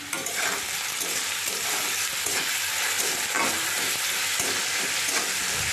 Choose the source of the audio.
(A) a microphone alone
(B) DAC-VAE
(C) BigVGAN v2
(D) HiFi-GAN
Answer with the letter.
A